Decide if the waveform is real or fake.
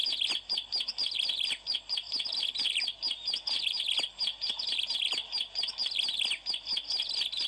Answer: real